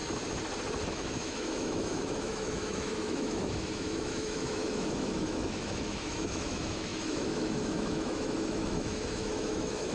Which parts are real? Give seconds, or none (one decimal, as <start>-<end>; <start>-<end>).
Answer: 0.0-0.9